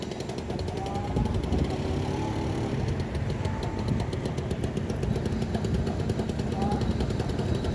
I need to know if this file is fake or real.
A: real